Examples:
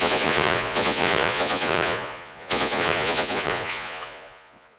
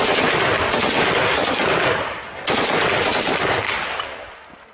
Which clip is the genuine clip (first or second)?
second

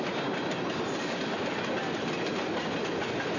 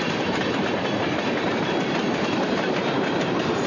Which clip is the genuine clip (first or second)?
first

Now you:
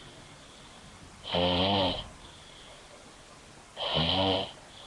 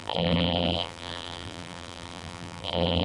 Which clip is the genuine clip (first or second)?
first